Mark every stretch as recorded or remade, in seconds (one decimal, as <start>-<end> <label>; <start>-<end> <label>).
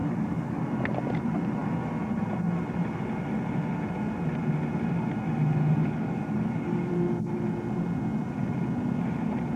0.0-0.6 remade; 0.6-5.8 recorded; 5.8-6.9 remade; 6.9-9.6 recorded